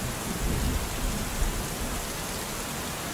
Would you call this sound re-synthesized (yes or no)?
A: no